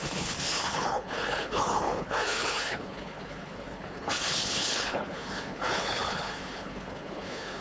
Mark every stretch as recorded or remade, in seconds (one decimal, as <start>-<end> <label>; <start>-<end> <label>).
0.0-7.6 remade